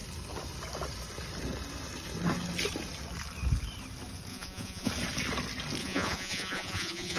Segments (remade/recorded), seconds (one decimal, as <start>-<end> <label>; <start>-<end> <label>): 0.0-4.3 recorded; 4.3-4.9 remade; 4.9-5.8 recorded; 5.8-7.2 remade